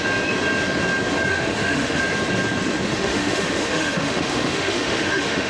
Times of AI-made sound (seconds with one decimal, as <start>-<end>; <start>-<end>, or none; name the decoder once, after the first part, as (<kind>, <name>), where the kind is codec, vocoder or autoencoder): 1.3-2.0 (autoencoder, DAC-VAE); 2.9-5.5